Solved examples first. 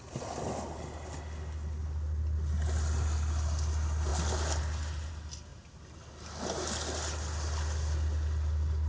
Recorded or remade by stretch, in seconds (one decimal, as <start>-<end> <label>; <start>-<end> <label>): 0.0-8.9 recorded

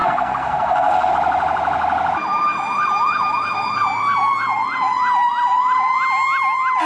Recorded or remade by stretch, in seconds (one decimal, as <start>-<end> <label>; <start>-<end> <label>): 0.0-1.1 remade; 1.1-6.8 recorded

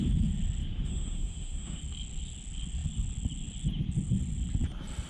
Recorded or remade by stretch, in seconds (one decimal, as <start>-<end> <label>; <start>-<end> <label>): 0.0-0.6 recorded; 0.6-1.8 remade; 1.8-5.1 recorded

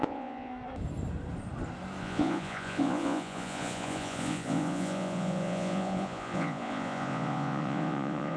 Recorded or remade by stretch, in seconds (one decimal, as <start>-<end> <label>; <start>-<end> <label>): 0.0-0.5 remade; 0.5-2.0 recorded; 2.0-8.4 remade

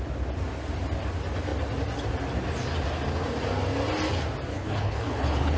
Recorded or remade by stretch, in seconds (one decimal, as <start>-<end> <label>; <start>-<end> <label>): 0.0-4.5 recorded; 4.5-5.6 remade